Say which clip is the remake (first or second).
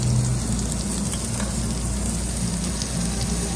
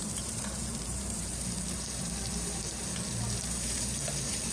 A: second